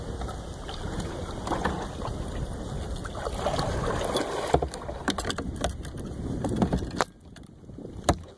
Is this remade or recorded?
recorded